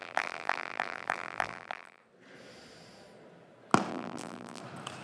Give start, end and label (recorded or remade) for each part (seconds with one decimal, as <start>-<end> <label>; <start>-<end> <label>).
0.0-2.0 remade; 2.0-3.9 recorded; 3.9-4.6 remade; 4.6-5.0 recorded